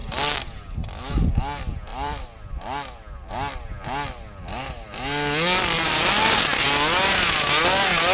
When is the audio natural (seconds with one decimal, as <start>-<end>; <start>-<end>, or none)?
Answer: 0.0-1.9; 3.3-8.1